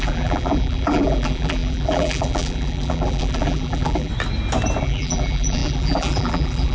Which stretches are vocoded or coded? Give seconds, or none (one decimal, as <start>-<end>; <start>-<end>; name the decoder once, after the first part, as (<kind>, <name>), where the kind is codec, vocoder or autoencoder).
0.0-4.1 (vocoder, BigVGAN v2); 4.8-6.7